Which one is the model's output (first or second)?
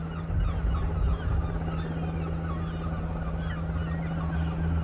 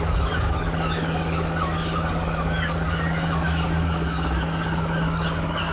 second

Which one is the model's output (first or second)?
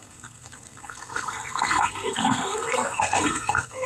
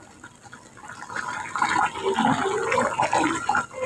first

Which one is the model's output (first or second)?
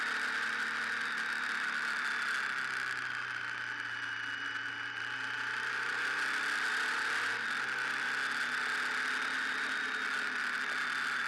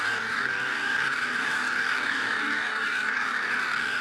second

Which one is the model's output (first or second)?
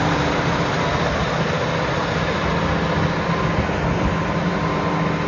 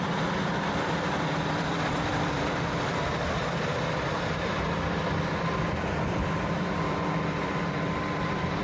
second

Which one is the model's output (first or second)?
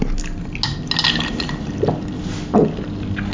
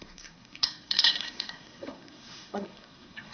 second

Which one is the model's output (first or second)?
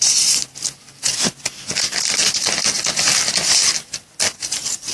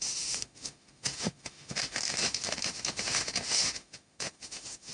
second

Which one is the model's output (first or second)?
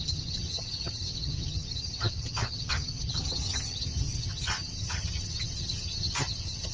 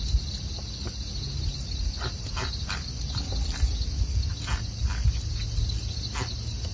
first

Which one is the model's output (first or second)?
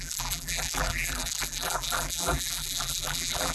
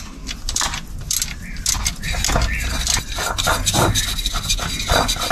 first